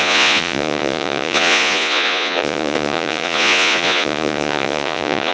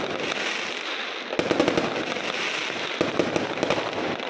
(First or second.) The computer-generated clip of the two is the first